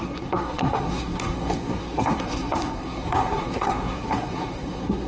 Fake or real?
fake